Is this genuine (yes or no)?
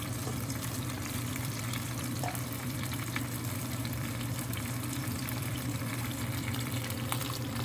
no